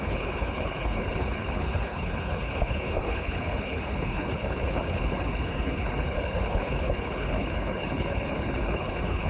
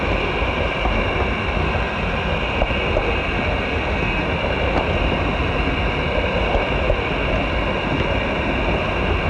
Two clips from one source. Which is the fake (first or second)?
first